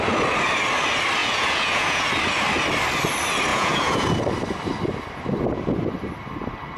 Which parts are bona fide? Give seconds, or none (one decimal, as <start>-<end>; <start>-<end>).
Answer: 0.0-1.2; 2.1-3.5; 4.1-6.8